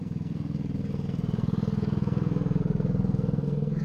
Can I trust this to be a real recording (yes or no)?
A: no